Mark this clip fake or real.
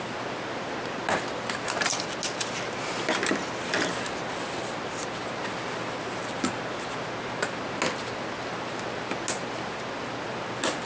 real